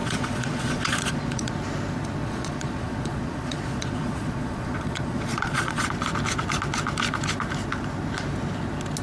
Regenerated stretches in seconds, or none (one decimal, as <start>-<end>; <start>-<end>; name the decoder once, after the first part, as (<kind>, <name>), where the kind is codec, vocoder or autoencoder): 0.0-1.5 (vocoder, Vocos); 2.2-5.9